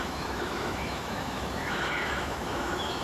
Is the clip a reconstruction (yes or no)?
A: yes